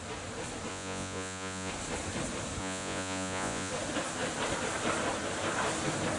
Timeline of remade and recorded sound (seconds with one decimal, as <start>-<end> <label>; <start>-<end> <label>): 0.0-0.7 recorded; 0.7-1.7 remade; 1.7-2.6 recorded; 2.6-3.7 remade; 3.7-6.2 recorded